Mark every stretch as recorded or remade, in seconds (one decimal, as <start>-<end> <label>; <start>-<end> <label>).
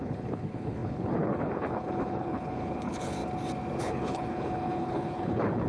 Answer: 0.0-3.2 remade; 3.2-3.8 recorded; 3.8-5.7 remade